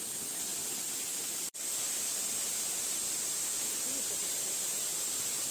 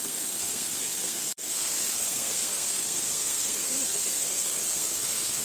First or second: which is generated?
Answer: second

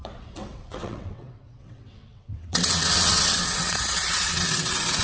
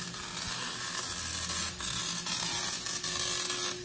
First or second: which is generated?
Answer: first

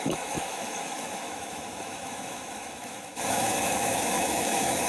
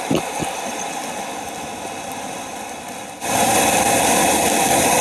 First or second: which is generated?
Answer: first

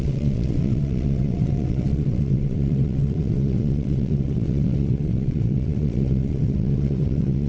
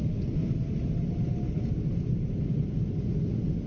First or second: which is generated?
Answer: first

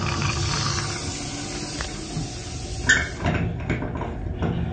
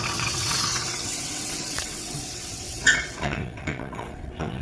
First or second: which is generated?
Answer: second